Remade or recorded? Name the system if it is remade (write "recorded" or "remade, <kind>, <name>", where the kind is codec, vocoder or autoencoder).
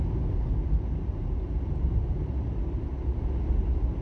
recorded